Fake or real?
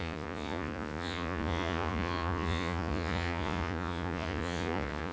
fake